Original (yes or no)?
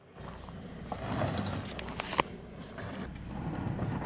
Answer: yes